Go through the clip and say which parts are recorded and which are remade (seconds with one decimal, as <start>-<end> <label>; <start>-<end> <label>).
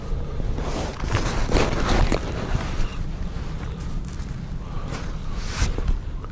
0.0-6.3 recorded